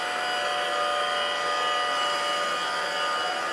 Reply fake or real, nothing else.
real